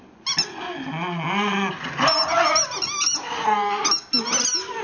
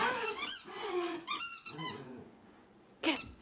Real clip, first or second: first